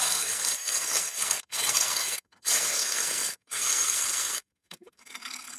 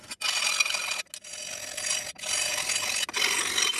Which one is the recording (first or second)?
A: second